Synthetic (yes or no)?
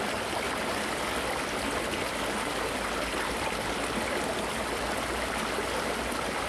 no